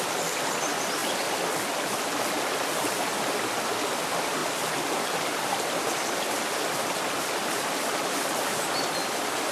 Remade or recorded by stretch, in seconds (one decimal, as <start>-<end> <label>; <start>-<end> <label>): 0.0-9.5 recorded